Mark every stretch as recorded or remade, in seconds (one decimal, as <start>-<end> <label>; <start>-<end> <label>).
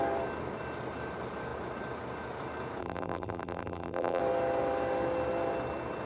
0.0-2.8 recorded; 2.8-4.2 remade; 4.2-6.1 recorded